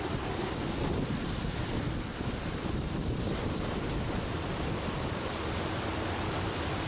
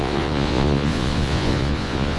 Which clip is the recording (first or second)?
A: first